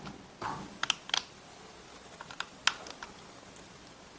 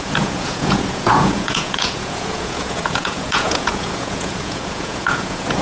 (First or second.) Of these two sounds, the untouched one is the first